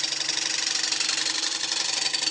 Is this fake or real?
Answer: real